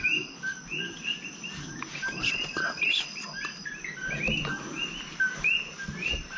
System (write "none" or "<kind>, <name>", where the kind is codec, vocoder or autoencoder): none